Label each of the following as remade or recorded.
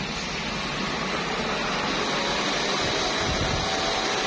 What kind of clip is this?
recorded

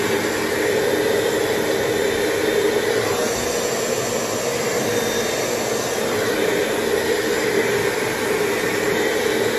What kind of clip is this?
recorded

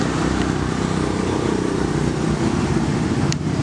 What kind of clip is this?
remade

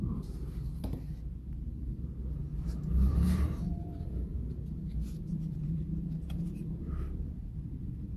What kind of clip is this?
remade